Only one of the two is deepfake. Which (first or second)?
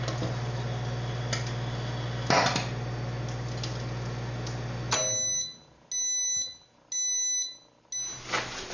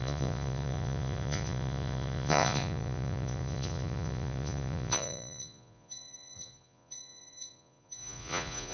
second